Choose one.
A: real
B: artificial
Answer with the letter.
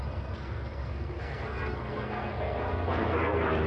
B